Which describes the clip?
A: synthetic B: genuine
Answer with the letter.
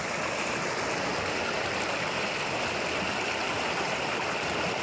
B